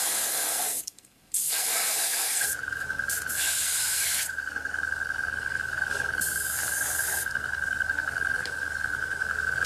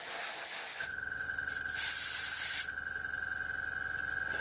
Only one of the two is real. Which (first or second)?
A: second